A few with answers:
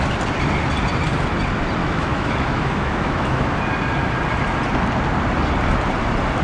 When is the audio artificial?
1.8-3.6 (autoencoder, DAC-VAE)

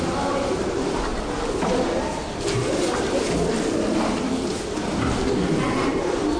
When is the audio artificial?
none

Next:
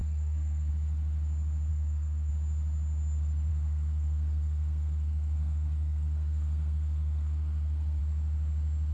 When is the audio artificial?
0.0-0.7 (codec, SNAC); 1.7-2.3; 3.5-8.0

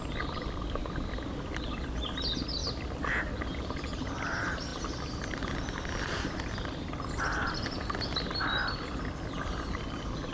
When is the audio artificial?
none

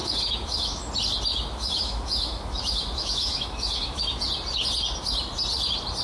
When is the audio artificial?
0.0-0.9 (autoencoder, DAC-VAE); 1.3-4.2